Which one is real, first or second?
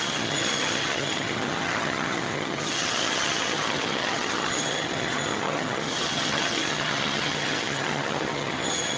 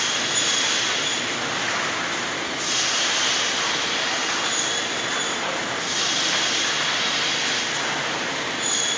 second